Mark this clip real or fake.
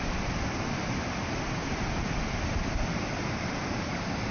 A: real